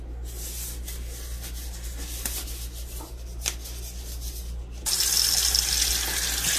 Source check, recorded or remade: recorded